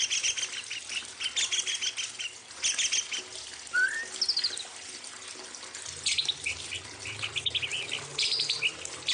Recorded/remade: recorded